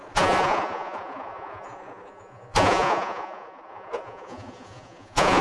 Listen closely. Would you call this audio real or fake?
fake